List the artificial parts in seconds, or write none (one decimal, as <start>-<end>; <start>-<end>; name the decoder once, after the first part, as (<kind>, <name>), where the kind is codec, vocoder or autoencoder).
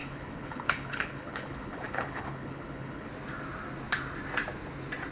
0.0-3.1 (codec, HILCodec)